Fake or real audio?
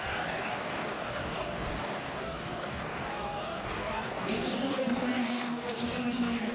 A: fake